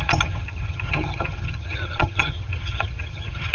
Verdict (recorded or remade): remade